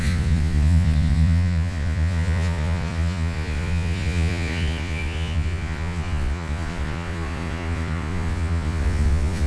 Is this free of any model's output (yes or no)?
no